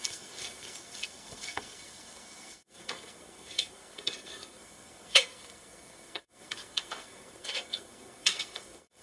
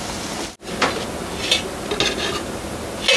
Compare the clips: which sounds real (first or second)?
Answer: second